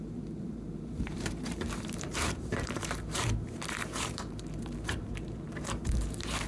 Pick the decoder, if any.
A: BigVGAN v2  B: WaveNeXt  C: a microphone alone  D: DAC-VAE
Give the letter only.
A